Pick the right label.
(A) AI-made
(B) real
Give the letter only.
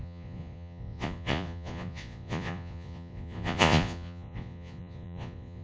A